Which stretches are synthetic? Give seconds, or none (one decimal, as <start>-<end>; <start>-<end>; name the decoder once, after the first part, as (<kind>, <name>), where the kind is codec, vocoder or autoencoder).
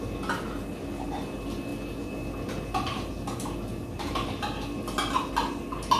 none